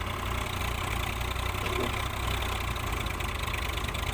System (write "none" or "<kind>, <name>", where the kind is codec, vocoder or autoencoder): none